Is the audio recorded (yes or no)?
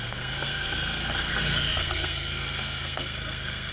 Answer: no